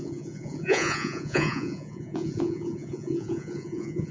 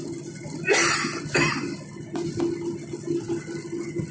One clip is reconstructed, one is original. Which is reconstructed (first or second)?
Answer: first